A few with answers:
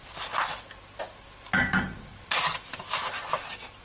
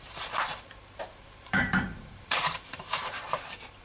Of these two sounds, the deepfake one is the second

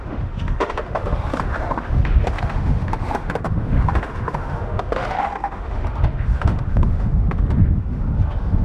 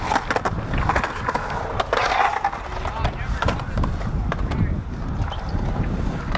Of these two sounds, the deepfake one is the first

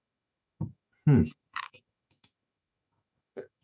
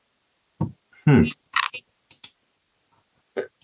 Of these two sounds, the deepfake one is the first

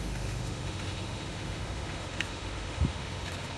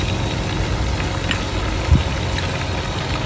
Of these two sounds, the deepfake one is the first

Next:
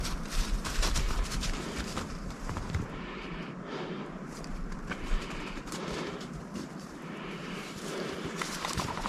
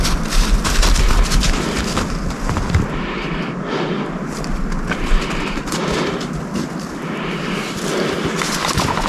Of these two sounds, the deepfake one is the first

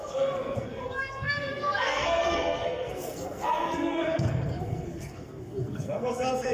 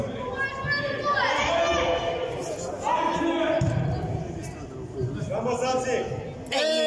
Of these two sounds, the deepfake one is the first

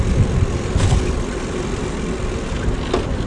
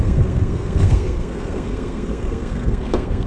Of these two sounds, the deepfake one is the second